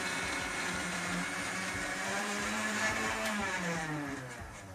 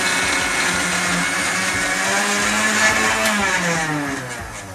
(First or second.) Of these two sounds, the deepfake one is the first